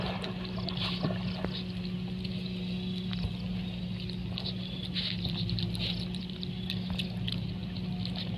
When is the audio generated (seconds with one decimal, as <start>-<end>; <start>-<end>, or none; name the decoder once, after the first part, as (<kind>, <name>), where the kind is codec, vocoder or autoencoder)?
none